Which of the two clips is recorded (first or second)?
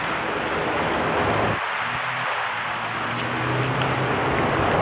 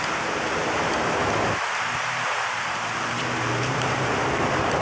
first